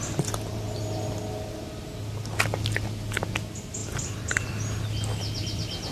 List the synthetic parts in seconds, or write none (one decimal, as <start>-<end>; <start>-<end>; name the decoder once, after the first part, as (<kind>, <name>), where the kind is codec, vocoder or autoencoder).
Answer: none